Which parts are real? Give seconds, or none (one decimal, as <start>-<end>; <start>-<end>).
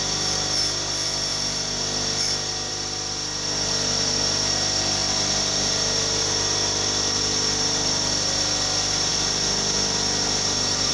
0.0-10.9